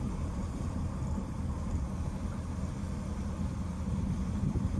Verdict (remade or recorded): recorded